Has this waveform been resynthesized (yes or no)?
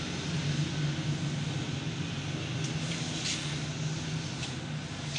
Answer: no